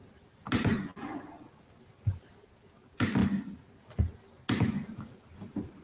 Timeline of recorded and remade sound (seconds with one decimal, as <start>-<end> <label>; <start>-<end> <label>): 0.0-5.8 recorded